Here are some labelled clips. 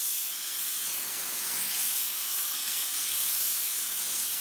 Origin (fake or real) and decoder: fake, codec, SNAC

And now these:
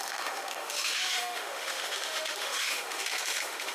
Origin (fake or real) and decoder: fake, autoencoder, DAC-VAE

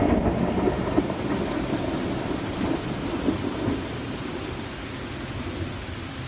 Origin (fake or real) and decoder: fake, vocoder, BigVGAN v2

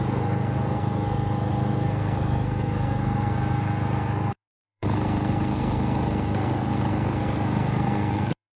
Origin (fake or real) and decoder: fake, codec, SNAC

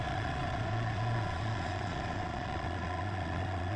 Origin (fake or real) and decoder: fake, vocoder, Vocos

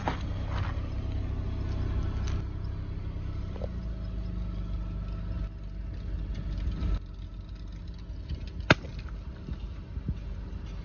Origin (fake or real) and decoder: real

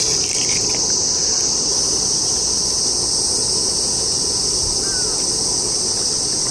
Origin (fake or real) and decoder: real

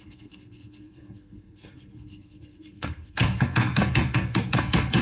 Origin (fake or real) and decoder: fake, codec, SNAC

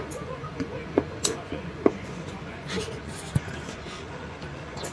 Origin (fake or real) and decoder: fake, vocoder, Vocos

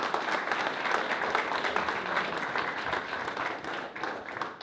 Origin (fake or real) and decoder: real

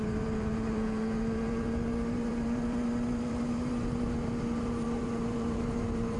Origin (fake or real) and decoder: fake, vocoder, BigVGAN v2